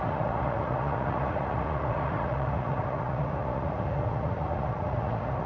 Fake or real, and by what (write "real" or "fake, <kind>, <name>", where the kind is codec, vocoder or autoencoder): fake, vocoder, Vocos